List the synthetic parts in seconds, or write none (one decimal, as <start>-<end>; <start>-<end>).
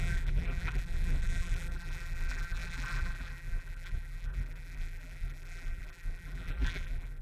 0.0-7.2